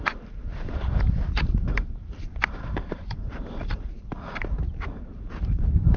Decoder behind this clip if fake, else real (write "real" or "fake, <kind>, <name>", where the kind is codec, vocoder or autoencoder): fake, vocoder, BigVGAN v2